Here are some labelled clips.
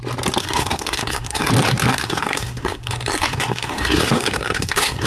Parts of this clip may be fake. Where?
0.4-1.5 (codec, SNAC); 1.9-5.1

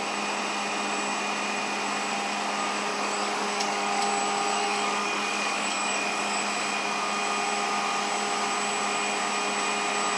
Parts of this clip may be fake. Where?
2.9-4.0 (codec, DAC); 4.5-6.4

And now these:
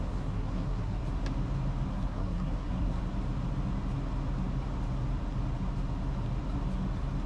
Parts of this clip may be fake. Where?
0.0-1.0 (codec, SNAC); 1.9-3.0

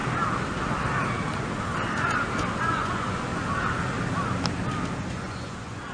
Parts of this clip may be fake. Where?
2.6-3.3 (vocoder, Vocos); 5.1-5.9

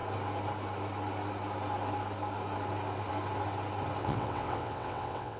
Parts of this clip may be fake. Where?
4.0-5.4 (vocoder, WaveNeXt)